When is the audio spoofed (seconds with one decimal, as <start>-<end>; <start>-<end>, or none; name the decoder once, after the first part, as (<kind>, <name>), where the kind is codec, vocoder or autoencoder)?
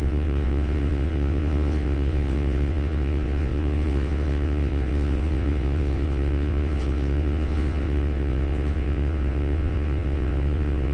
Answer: 0.0-10.9 (vocoder, WaveNeXt)